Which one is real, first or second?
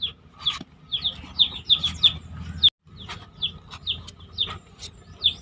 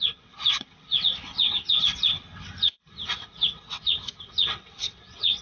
first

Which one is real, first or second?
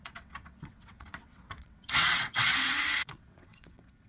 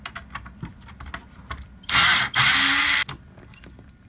second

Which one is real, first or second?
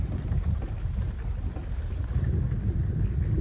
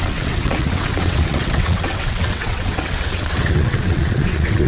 first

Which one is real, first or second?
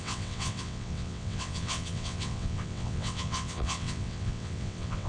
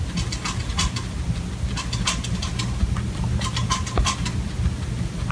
second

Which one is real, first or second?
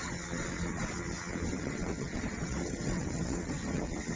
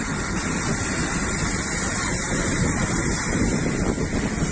second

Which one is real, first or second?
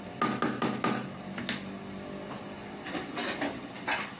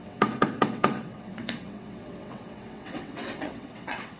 first